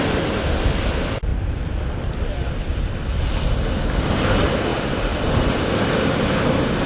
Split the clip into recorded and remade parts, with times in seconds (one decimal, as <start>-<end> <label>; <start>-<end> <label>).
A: 0.0-6.9 recorded